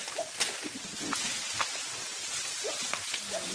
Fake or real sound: real